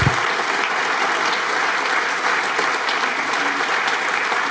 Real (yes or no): no